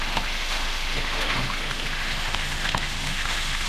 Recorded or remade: remade